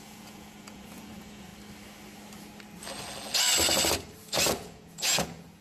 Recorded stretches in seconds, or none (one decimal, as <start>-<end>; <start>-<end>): 1.5-4.5